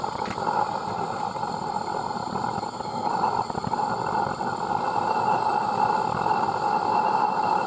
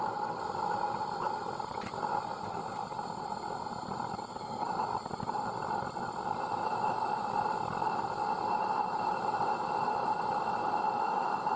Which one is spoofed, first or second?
first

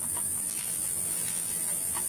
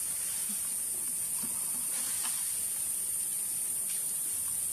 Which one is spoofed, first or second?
first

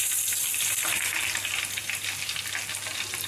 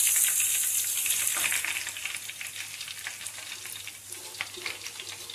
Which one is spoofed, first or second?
second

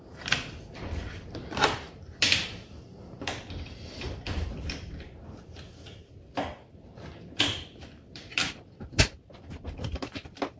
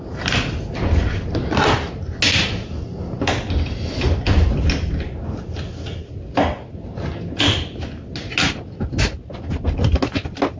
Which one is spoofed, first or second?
first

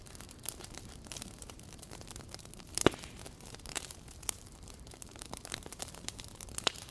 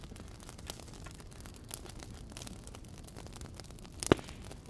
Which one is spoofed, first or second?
first